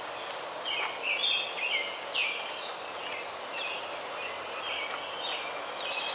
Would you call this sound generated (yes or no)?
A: no